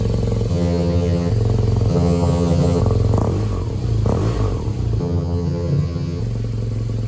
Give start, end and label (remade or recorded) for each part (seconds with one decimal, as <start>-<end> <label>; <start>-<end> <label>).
0.0-0.5 recorded; 0.5-1.3 remade; 1.3-1.9 recorded; 1.9-2.8 remade; 2.8-5.0 recorded; 5.0-6.2 remade; 6.2-7.1 recorded